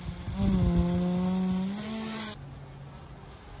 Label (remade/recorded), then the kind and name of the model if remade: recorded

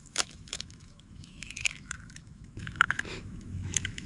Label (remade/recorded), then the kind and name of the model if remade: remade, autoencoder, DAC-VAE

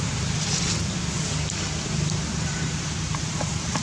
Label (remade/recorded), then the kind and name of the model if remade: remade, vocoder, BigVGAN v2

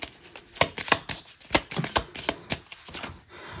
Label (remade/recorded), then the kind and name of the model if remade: recorded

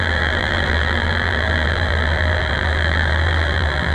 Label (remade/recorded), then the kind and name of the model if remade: remade, vocoder, BigVGAN v2